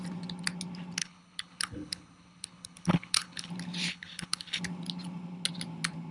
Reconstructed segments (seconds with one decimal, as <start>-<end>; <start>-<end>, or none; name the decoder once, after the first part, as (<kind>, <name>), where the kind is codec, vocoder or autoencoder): 1.0-3.5 (codec, HILCodec); 3.9-4.6